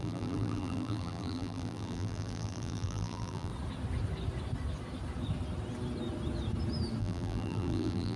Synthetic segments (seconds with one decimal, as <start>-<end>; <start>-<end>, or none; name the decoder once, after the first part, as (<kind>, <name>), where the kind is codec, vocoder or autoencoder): 0.0-3.5 (vocoder, BigVGAN v2); 7.0-8.2